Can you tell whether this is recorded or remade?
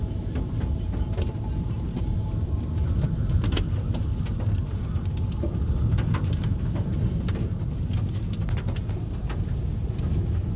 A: recorded